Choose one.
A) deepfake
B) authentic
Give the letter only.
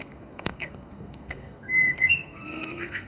A